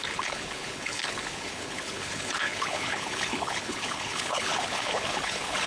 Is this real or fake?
fake